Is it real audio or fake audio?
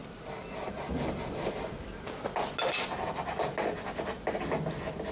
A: real